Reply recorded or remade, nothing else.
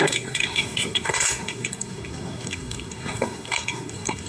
remade